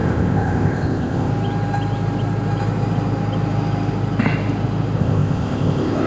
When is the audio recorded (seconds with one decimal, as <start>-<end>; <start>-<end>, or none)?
1.3-5.0